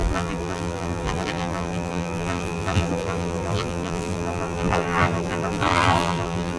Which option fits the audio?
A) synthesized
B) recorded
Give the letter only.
A